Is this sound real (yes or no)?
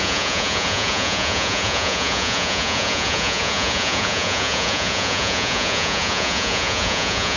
no